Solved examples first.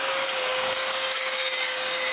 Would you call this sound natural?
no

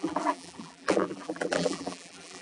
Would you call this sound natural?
no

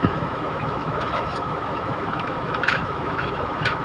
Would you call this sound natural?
no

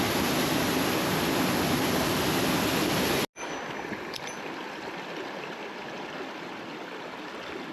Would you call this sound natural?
yes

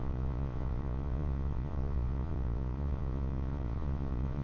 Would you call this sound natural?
no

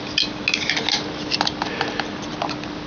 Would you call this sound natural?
yes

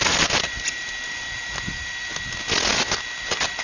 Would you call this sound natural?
yes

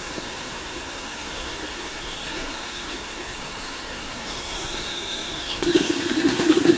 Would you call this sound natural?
no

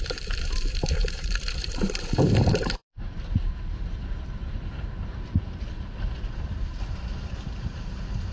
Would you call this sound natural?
no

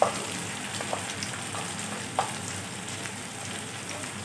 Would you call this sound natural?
no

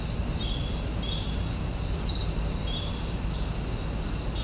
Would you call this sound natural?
yes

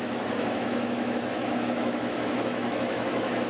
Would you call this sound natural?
no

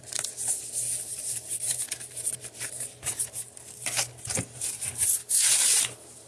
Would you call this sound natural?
no